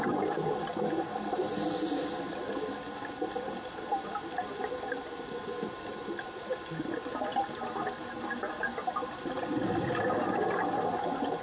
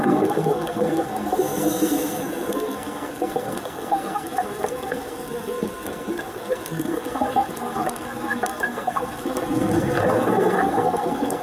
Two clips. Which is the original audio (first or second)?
first